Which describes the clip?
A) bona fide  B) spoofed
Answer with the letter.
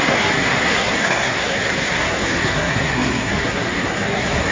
B